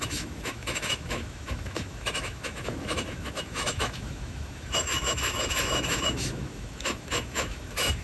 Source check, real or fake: fake